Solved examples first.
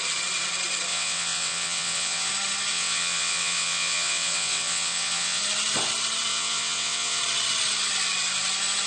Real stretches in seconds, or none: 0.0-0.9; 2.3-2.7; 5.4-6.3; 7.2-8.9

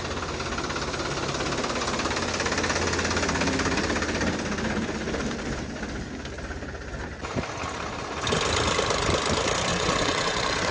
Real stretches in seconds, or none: 0.0-9.7

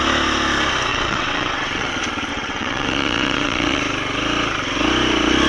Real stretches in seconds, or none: 0.0-0.9; 1.9-2.3; 3.8-5.5